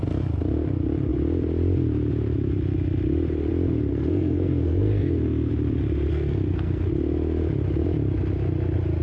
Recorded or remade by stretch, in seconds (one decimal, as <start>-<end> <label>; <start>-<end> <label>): 0.0-3.9 recorded; 3.9-5.5 remade; 5.5-6.1 recorded; 6.1-6.9 remade; 6.9-9.0 recorded